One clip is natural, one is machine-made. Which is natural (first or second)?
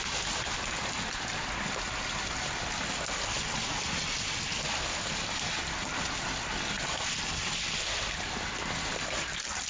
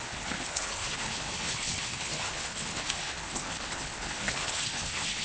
first